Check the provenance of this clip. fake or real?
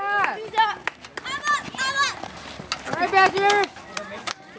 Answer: real